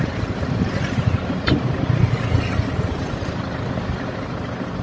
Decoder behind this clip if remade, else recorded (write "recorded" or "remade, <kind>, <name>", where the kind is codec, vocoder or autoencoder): recorded